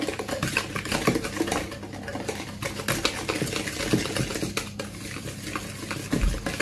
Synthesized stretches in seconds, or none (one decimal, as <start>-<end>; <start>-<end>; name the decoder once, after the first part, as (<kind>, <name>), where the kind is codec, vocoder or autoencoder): 2.1-2.8 (vocoder, BigVGAN v2); 4.3-5.3